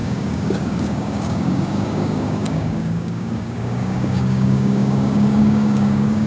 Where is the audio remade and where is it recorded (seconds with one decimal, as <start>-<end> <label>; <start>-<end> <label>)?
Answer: 0.0-6.3 remade